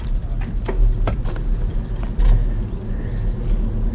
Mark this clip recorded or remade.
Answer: recorded